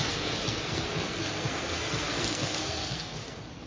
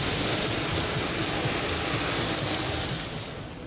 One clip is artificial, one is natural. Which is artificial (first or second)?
first